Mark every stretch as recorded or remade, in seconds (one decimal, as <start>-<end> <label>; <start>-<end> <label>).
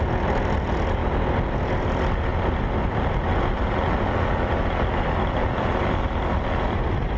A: 0.0-7.2 recorded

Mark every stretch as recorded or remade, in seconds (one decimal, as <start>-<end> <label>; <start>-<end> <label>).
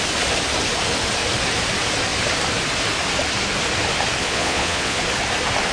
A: 0.0-4.2 recorded; 4.2-5.0 remade; 5.0-5.7 recorded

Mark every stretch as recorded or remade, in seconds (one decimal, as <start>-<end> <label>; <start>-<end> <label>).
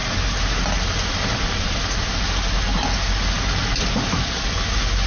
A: 0.0-5.1 recorded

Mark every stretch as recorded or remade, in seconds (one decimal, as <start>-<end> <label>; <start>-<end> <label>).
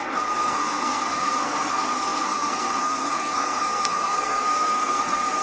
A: 0.0-5.4 remade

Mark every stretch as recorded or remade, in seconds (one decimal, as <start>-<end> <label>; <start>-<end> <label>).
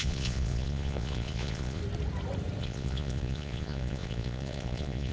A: 0.0-1.8 remade; 1.8-2.6 recorded; 2.6-5.1 remade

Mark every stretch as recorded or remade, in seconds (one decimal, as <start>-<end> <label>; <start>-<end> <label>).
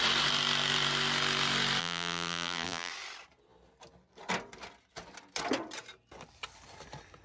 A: 0.0-1.8 recorded; 1.8-2.9 remade; 2.9-7.2 recorded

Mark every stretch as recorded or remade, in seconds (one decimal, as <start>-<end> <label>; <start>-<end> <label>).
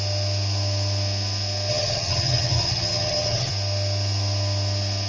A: 0.0-1.7 recorded; 1.7-3.5 remade; 3.5-5.1 recorded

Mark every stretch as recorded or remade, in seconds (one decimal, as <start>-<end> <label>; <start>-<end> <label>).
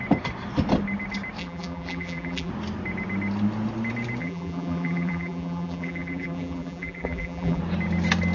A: 0.0-1.4 recorded; 1.4-2.5 remade; 2.5-4.2 recorded; 4.2-7.6 remade; 7.6-8.3 recorded